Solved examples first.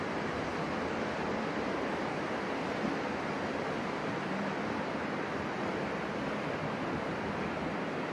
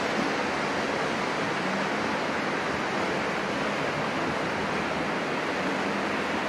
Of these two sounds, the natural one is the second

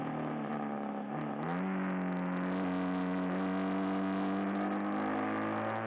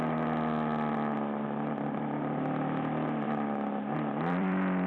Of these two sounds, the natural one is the first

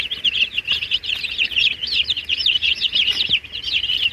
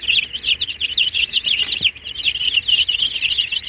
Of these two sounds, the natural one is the second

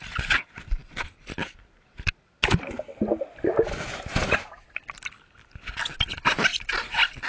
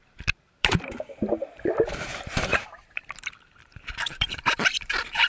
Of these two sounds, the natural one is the first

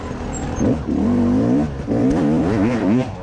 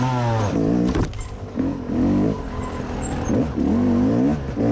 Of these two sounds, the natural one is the second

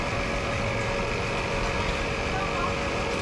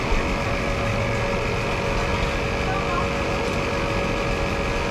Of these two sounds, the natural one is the second